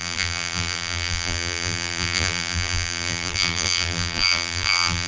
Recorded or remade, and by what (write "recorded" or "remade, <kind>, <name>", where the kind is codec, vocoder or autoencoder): remade, vocoder, BigVGAN v2